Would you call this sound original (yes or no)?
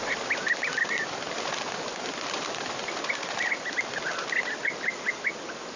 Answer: yes